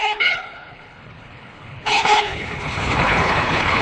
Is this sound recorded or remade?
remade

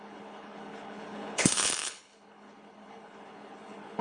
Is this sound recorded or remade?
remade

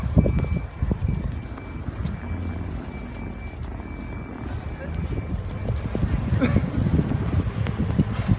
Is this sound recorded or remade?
recorded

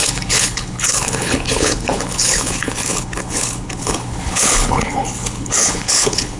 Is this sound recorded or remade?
remade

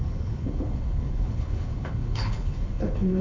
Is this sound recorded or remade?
remade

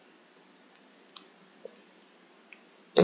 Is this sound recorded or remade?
recorded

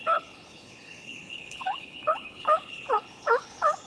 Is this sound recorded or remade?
remade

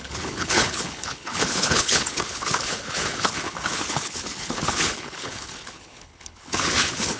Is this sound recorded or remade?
remade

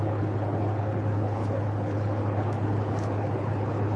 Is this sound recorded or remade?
remade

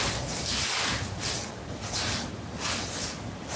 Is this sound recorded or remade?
recorded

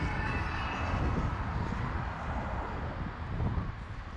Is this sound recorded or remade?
recorded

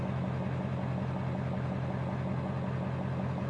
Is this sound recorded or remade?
recorded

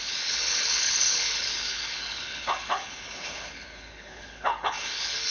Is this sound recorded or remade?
remade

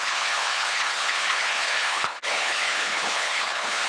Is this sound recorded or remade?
remade